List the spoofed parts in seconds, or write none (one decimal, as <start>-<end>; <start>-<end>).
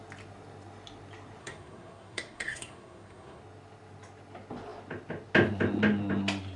1.4-3.4